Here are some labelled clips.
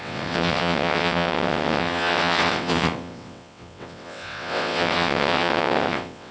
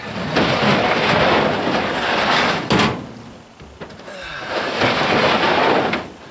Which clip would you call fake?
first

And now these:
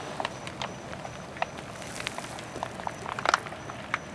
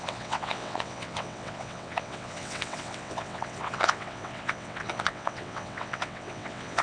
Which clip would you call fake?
second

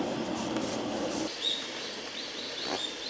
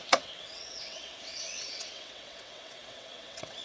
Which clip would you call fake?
second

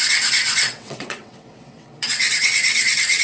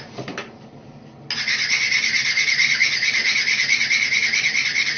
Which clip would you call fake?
first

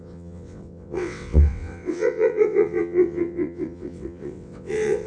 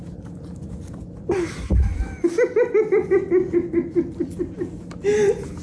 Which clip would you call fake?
first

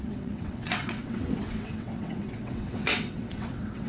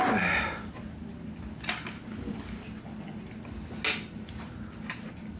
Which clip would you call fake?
first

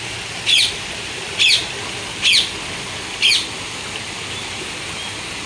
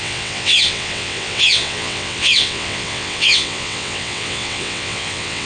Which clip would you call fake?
second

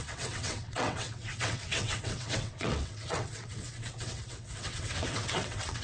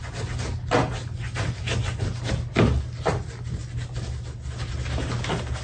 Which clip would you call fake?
first